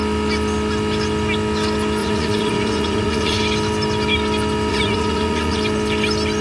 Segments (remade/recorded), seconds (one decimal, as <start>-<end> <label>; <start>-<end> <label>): 0.0-2.0 recorded; 2.0-3.4 remade; 3.4-4.7 recorded; 4.7-5.6 remade; 5.6-6.4 recorded